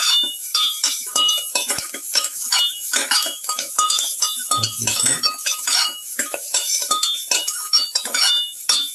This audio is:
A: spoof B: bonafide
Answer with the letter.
A